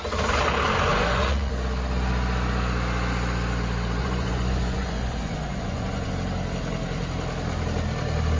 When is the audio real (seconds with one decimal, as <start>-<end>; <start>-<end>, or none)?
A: 0.0-0.9; 1.5-4.0; 6.1-8.4

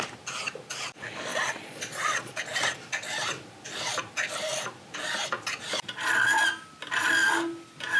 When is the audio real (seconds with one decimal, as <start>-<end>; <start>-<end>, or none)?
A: 0.0-1.3; 2.4-8.0

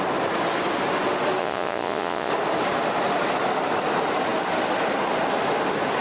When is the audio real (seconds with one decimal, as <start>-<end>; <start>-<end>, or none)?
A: 0.0-1.4; 2.3-6.0

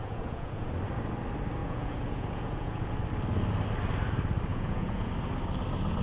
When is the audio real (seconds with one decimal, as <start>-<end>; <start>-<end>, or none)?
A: 0.7-1.6; 2.9-4.5; 5.1-6.0

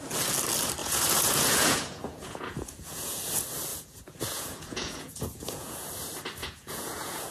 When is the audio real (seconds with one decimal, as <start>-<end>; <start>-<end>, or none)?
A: 0.0-0.8; 3.2-3.7; 5.9-6.4

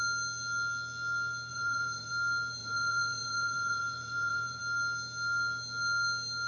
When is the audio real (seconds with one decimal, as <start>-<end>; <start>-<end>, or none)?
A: 0.0-1.5; 2.1-2.6; 4.6-6.5

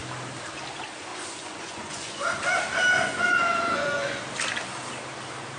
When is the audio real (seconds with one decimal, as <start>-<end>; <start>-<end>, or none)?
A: 0.0-1.1; 2.2-3.1; 4.2-5.6